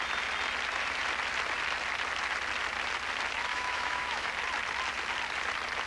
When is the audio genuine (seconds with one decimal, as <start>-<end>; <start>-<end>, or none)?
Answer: 0.0-3.5; 4.3-5.9